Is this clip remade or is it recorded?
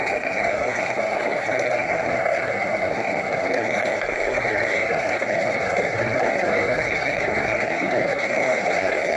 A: remade